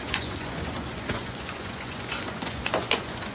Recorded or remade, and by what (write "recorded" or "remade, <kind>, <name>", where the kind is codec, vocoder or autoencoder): remade, vocoder, Vocos